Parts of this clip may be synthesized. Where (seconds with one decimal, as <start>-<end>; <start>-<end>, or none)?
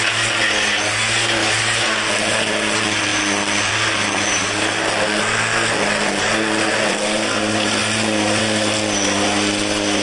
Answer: none